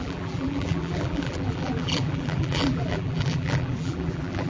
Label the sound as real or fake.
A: fake